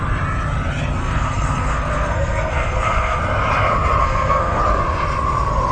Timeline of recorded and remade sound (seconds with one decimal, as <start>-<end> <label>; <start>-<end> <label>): 0.0-1.0 recorded; 1.0-3.2 remade; 3.2-4.0 recorded; 4.0-4.6 remade; 4.6-5.7 recorded